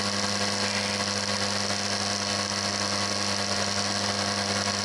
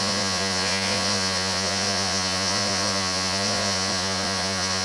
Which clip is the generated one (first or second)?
second